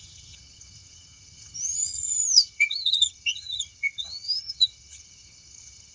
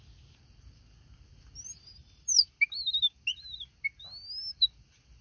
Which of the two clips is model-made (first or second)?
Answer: first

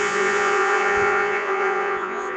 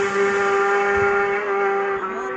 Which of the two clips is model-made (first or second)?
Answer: first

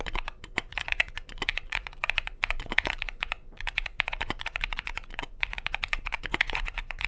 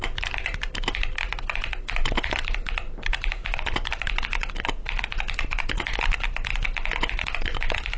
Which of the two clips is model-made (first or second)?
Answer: first